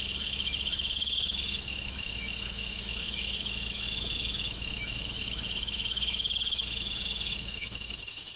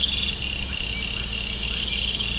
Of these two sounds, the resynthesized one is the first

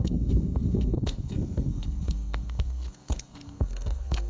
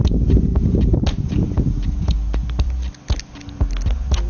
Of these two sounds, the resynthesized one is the first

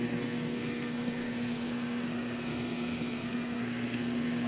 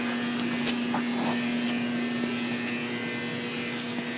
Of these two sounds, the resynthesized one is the first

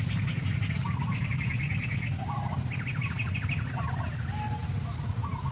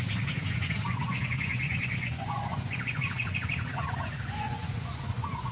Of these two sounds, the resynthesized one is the second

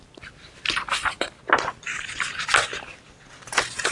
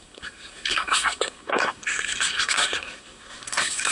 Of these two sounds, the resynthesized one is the second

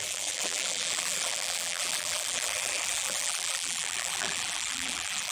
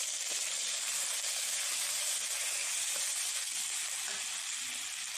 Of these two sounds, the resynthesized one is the first